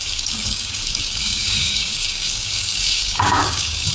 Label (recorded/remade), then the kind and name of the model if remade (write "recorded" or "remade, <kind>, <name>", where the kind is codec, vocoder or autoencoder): remade, codec, DAC